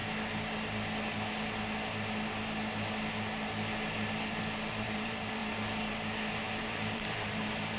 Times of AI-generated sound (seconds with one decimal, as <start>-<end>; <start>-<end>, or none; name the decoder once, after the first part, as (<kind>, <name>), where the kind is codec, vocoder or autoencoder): 4.7-5.4 (vocoder, BigVGAN v2); 6.6-7.8